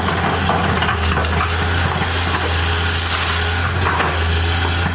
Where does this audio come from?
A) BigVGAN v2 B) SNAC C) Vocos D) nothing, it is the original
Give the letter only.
D